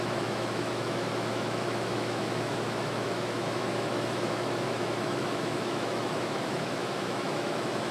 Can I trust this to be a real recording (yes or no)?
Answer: no